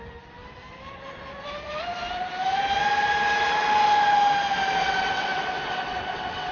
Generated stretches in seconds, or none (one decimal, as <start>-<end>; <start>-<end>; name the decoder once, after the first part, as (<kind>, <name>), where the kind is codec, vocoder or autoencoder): 4.8-6.5 (vocoder, WaveNeXt)